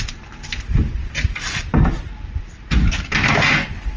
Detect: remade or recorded recorded